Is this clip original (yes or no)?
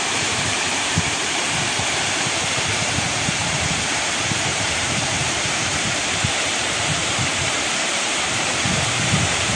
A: no